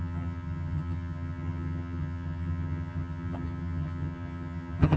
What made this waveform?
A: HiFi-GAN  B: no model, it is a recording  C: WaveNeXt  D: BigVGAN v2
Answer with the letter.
A